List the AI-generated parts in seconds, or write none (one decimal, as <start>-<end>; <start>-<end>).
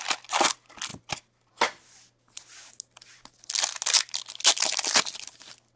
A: none